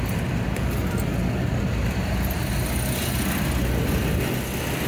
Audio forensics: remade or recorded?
recorded